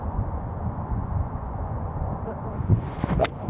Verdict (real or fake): fake